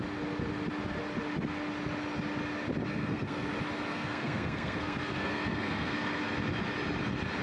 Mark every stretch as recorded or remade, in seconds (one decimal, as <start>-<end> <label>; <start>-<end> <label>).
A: 0.0-2.9 recorded; 2.9-3.5 remade; 3.5-3.9 recorded; 3.9-6.2 remade; 6.2-7.4 recorded